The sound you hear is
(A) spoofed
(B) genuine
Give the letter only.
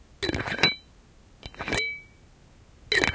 B